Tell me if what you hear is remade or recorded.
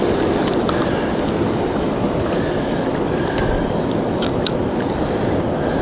recorded